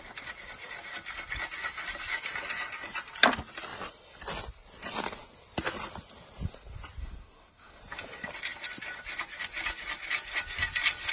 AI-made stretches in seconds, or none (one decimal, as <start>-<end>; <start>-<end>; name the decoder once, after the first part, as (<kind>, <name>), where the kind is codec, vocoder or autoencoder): 7.0-7.8 (codec, SNAC)